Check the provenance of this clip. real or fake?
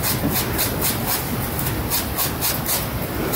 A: real